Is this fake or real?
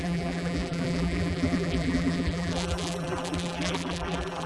fake